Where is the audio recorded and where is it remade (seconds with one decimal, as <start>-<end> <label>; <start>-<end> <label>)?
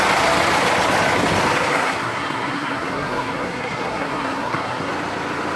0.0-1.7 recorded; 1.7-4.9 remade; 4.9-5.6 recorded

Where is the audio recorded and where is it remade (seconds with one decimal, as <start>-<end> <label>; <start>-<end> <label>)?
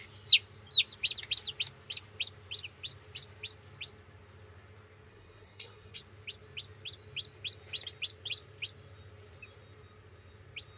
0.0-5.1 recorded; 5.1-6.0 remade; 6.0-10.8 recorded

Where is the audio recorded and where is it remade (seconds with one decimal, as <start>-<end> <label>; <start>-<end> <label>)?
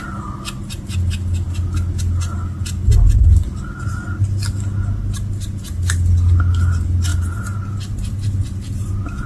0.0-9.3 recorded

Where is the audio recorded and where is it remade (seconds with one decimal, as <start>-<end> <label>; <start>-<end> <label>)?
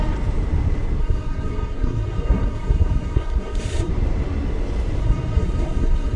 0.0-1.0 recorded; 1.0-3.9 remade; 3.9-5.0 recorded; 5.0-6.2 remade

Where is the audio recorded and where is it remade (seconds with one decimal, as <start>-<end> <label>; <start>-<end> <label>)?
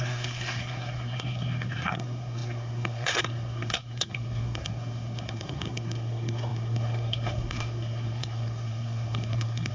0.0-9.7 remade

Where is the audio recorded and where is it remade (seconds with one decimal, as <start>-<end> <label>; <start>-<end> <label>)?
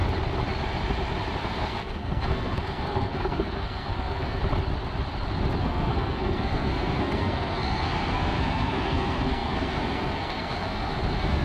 0.0-1.4 recorded; 1.4-4.4 remade; 4.4-5.6 recorded; 5.6-11.4 remade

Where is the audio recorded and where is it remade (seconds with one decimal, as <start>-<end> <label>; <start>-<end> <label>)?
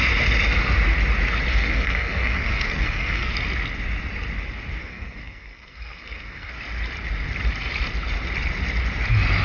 0.0-1.5 recorded; 1.5-3.3 remade; 3.3-4.8 recorded; 4.8-6.5 remade; 6.5-9.4 recorded